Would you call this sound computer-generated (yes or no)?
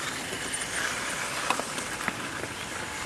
no